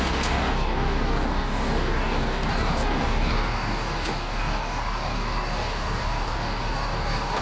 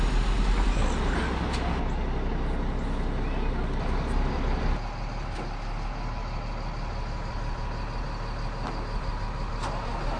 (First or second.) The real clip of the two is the second